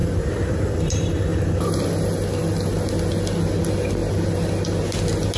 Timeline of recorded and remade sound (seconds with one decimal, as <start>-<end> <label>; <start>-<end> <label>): 0.0-1.6 remade; 1.6-5.4 recorded

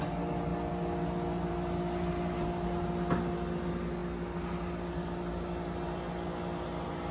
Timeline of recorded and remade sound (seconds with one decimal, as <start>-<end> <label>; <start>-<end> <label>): 0.0-7.1 recorded